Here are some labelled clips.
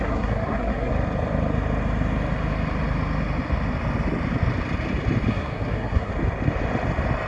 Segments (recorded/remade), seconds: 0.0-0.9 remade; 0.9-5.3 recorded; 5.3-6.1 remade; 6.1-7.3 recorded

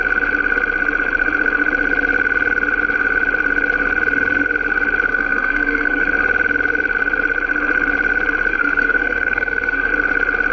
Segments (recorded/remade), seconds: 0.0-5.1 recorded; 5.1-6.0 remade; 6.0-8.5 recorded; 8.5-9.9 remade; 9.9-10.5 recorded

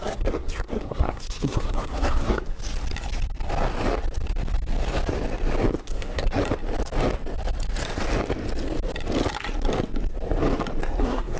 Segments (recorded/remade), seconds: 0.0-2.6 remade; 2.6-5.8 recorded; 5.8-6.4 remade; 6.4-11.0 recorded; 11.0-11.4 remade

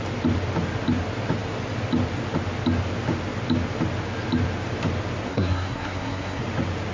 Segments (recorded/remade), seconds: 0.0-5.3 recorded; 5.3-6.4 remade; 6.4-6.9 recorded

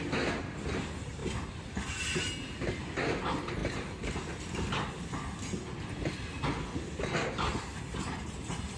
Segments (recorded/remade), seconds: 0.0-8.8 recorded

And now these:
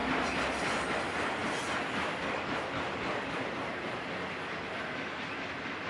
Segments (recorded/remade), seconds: 0.0-5.9 recorded